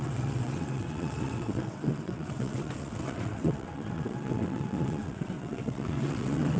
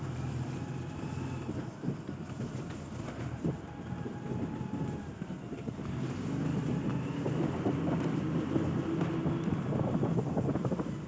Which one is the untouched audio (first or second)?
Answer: second